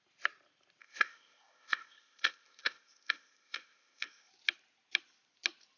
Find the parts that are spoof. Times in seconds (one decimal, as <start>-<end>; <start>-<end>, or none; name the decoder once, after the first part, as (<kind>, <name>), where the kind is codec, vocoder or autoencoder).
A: 0.8-4.3 (codec, ZipCodec)